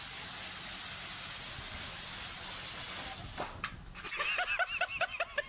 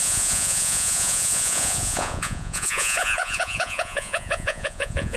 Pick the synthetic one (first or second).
second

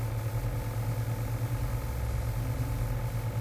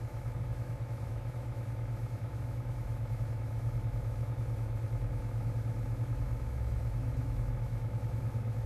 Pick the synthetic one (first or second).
second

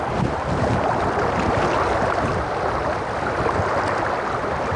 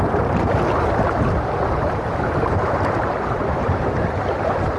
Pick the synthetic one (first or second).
second